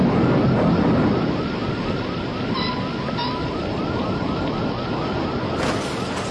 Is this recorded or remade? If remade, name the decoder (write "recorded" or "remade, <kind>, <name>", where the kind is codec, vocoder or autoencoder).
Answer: recorded